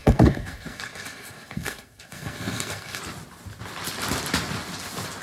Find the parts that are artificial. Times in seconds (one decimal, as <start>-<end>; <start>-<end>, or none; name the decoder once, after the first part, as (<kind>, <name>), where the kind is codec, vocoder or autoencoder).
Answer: 0.0-3.0 (codec, SNAC)